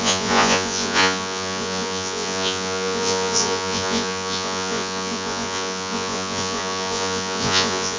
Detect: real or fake fake